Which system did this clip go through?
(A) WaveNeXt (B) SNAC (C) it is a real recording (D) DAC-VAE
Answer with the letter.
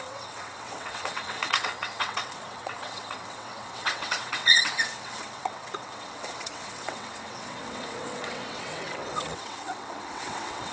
A